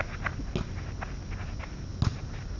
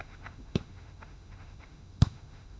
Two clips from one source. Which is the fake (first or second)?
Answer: second